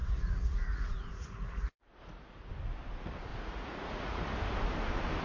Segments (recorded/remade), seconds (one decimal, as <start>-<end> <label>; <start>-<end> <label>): 0.0-2.5 remade; 2.5-3.3 recorded; 3.3-4.2 remade; 4.2-5.2 recorded